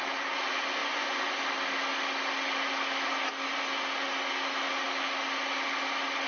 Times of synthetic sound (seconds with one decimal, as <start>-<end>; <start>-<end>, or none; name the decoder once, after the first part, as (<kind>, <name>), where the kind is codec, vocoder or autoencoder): 0.8-1.4 (vocoder, Vocos)